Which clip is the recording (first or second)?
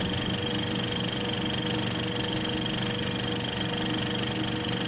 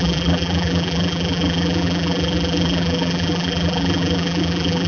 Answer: first